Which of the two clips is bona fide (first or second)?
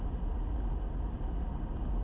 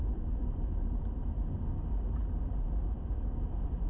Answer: first